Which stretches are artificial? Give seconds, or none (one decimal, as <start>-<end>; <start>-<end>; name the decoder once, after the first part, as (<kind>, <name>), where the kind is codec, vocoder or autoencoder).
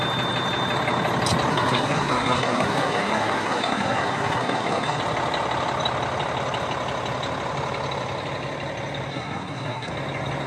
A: 1.5-5.0 (codec, SNAC); 9.1-9.9